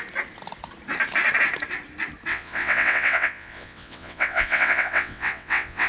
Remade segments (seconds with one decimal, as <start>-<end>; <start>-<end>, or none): 2.3-5.9